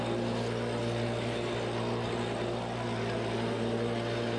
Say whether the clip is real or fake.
real